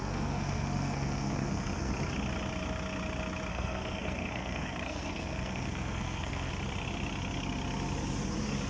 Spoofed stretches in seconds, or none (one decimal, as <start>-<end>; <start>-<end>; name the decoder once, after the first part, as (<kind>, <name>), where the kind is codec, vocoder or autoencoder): 0.0-1.9 (codec, SNAC); 3.5-6.5